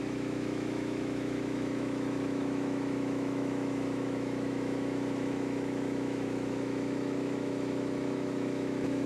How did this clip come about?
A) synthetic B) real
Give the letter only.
A